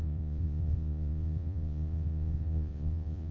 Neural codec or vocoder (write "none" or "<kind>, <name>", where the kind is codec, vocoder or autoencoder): vocoder, Vocos